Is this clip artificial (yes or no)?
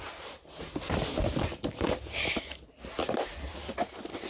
no